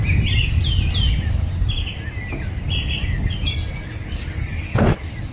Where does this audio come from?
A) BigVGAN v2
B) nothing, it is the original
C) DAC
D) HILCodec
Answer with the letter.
B